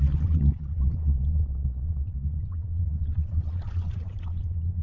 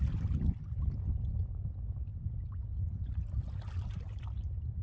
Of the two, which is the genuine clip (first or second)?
second